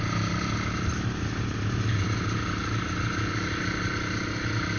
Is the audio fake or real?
real